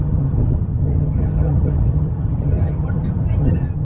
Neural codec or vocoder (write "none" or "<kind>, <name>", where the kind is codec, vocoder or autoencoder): vocoder, HiFi-GAN